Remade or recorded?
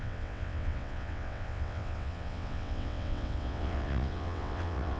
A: remade